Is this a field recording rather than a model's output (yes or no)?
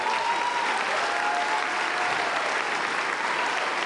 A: yes